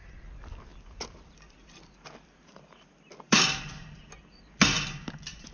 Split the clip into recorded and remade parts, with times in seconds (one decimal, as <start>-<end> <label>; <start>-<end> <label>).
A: 0.0-0.7 recorded; 0.7-4.0 remade; 4.0-5.5 recorded